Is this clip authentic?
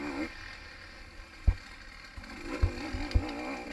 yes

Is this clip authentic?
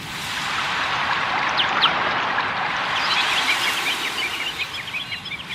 no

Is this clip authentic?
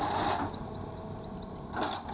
yes